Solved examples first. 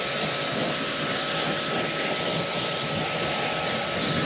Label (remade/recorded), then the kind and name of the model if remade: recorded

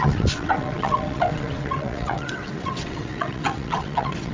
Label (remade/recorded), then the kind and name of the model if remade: remade, vocoder, WaveNeXt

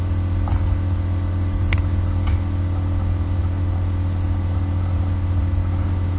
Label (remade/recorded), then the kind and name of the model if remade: recorded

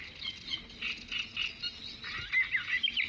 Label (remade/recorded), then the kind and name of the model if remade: recorded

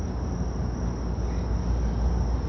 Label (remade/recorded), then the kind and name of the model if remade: recorded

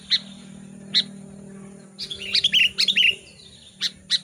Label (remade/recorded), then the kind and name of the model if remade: recorded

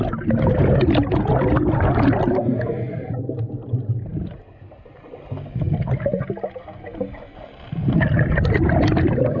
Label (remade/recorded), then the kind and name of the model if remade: recorded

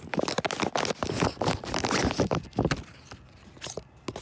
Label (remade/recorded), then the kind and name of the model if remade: recorded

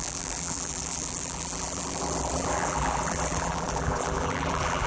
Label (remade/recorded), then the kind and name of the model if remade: remade, vocoder, BigVGAN v2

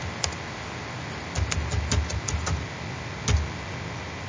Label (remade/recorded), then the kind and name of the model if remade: recorded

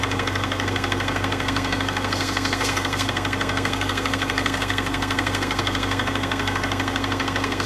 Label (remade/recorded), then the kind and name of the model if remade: remade, codec, SNAC